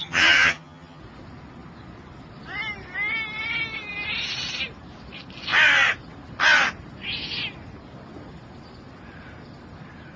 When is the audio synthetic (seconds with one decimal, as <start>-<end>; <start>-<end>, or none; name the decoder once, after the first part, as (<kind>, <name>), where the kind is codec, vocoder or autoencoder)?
0.0-1.0 (vocoder, HiFi-GAN)